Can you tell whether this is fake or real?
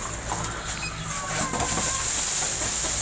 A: real